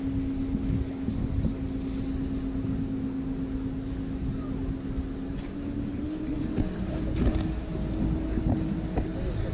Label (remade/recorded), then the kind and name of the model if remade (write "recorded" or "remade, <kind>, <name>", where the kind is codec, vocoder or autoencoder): recorded